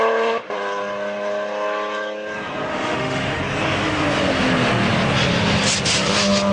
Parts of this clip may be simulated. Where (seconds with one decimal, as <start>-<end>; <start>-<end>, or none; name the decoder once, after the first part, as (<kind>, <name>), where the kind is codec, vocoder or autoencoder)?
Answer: 2.7-3.4 (autoencoder, DAC-VAE)